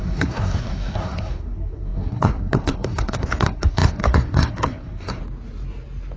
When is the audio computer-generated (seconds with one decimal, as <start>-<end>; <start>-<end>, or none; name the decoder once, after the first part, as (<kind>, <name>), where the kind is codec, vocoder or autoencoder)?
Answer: 0.0-5.2 (codec, SNAC)